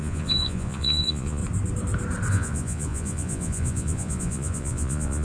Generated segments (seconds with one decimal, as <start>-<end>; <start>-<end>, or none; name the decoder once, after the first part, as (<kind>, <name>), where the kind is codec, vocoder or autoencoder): 0.0-1.4 (vocoder, Vocos); 2.3-5.2